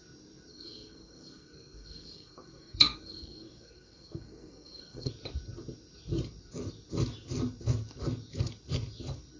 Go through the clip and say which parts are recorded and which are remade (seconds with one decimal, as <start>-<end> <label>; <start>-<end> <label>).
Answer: 0.0-0.5 recorded; 0.5-5.1 remade; 5.1-9.4 recorded